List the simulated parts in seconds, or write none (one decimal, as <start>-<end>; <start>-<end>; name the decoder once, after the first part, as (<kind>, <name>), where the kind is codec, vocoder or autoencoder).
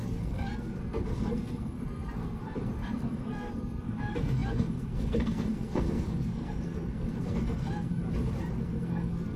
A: 0.0-7.9 (codec, SNAC); 8.5-9.4